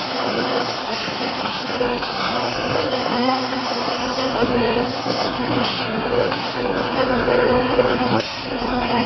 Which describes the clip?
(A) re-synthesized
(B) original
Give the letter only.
A